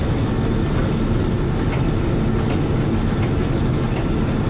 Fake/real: real